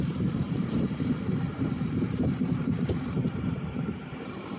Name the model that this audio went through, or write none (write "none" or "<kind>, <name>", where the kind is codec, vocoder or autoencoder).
vocoder, BigVGAN v2